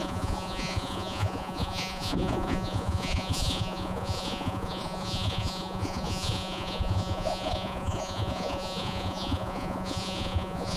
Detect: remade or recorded remade